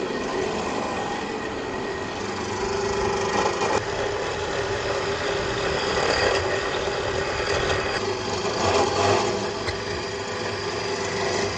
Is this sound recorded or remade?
recorded